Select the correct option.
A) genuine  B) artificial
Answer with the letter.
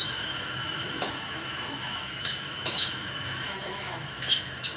B